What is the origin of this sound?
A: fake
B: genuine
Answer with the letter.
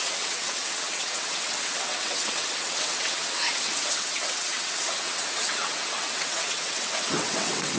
A